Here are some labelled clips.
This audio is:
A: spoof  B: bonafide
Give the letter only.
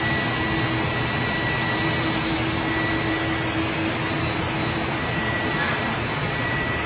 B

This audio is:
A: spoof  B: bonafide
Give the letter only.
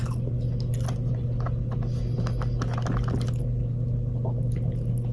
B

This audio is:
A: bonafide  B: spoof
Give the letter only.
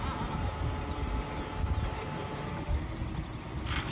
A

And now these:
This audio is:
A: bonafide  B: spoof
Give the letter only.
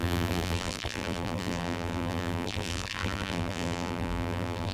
B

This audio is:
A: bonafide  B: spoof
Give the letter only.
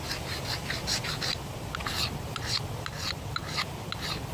A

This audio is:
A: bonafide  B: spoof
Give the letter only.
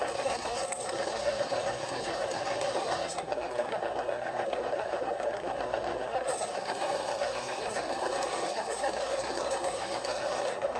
B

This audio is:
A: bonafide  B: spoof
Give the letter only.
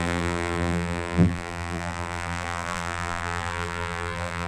B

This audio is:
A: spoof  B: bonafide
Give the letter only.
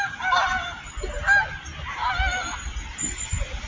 B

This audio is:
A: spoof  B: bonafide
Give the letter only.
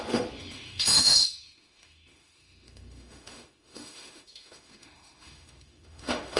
A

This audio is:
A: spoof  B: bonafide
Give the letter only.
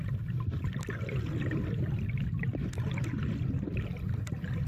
B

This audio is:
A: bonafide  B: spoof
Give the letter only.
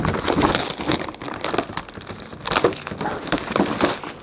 A